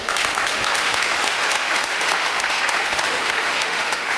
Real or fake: fake